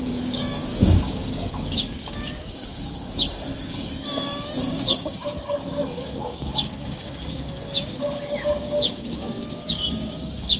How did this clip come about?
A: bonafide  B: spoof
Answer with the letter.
B